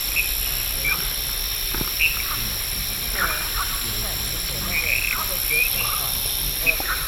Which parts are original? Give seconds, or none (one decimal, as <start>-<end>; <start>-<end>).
0.0-3.3; 4.0-6.6